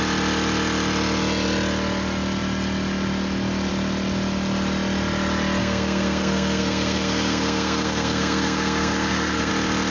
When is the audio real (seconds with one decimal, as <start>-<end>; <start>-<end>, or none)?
0.0-5.6; 9.5-9.9